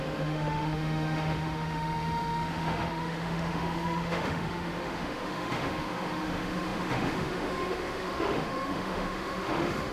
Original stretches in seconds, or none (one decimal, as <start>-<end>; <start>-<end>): none

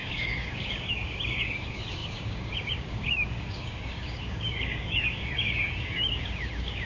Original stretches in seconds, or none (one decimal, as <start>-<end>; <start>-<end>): none

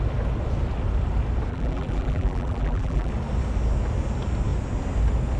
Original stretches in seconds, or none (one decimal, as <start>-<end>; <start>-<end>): 0.0-1.5; 3.1-5.4

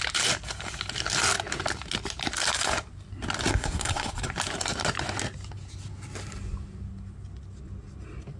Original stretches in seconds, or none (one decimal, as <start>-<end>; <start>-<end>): 0.0-3.5; 4.1-8.4